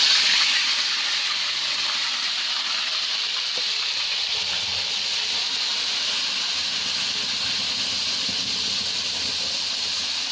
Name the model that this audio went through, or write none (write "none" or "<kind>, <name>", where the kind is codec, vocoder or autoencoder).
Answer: none